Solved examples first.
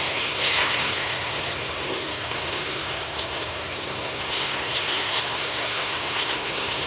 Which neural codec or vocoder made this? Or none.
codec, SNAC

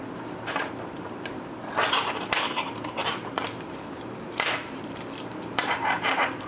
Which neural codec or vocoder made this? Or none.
vocoder, BigVGAN v2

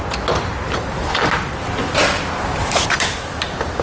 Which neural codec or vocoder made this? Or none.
none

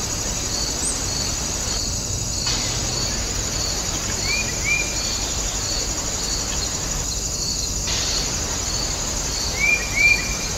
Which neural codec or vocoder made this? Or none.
none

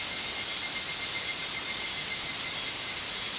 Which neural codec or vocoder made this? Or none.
none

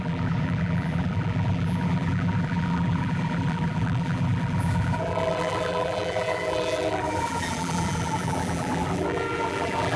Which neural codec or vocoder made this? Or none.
vocoder, BigVGAN v2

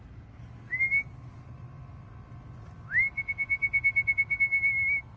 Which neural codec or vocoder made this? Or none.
none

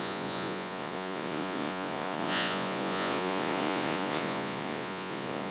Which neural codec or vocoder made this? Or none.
vocoder, Vocos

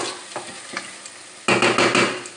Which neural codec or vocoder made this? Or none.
none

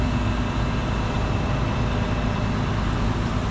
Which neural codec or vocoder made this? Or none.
none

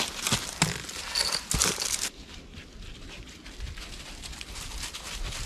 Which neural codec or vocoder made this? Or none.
none